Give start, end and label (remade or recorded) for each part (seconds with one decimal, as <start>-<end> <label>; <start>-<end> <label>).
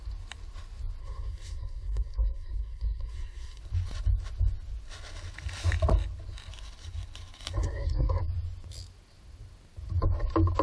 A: 0.0-1.0 recorded; 1.0-3.6 remade; 3.6-7.6 recorded; 7.6-8.2 remade; 8.2-10.6 recorded